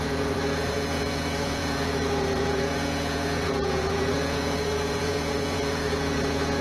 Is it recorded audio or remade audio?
remade